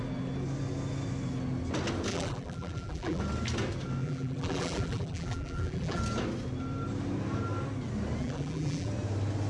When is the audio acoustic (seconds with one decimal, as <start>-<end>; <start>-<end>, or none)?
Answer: 0.0-2.1; 3.2-4.0; 6.0-8.2; 8.9-9.5